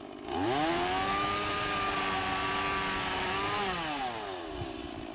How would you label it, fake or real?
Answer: real